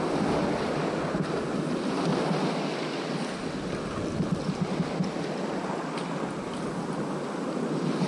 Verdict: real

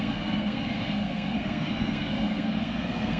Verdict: fake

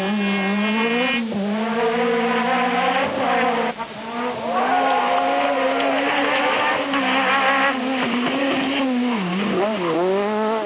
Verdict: real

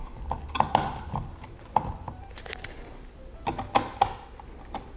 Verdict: real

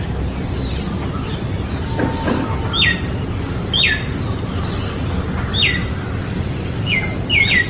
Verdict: real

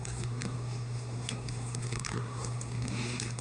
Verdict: fake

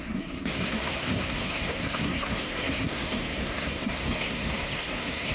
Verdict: fake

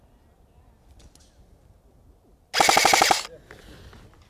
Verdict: real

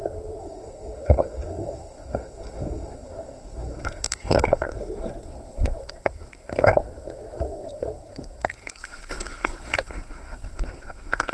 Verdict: fake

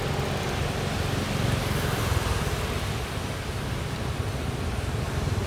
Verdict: real